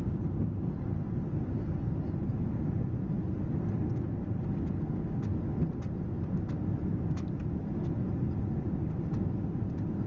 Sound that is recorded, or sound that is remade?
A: recorded